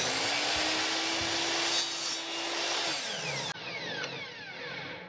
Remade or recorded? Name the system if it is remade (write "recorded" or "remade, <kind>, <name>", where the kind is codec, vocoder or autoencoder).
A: recorded